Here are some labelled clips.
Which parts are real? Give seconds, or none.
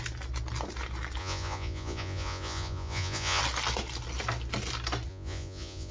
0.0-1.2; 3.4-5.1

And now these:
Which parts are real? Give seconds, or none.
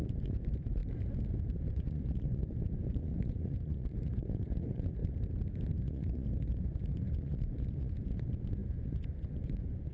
0.8-1.7; 5.0-5.8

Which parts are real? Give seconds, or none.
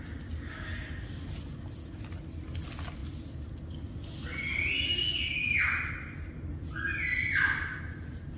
0.0-8.4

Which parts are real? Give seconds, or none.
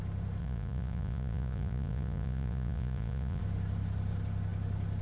0.0-0.4; 3.4-5.0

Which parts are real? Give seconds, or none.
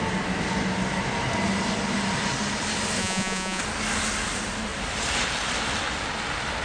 0.0-3.0; 3.6-6.6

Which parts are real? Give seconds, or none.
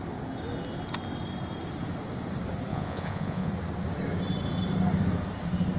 0.0-2.7; 3.5-5.8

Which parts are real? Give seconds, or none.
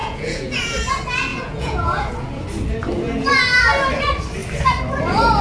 0.9-1.3; 2.1-5.4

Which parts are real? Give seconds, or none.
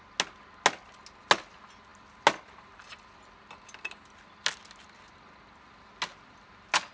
0.0-6.9